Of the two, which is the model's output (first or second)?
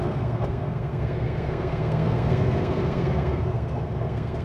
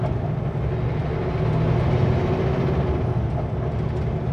first